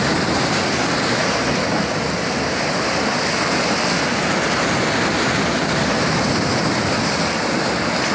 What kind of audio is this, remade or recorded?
recorded